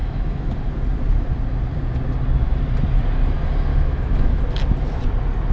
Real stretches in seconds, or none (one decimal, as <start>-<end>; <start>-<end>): 0.5-3.7; 4.4-5.5